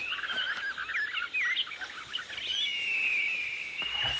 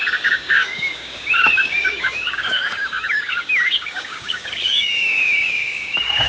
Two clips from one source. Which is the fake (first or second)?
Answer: second